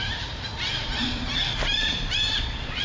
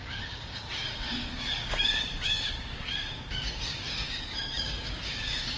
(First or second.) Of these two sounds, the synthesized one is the second